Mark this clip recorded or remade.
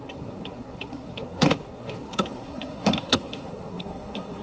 remade